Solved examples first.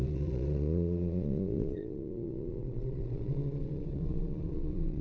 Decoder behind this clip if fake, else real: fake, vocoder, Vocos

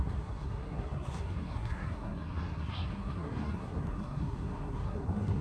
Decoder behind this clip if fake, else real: fake, codec, SNAC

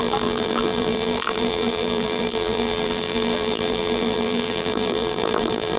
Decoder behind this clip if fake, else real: fake, vocoder, BigVGAN v2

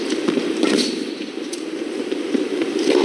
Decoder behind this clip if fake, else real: fake, vocoder, BigVGAN v2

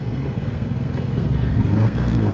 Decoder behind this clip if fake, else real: fake, codec, SNAC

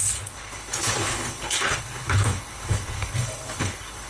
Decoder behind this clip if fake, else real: fake, codec, HILCodec